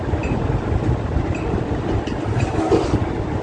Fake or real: real